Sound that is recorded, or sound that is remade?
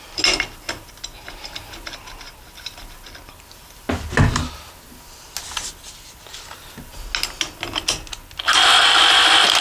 recorded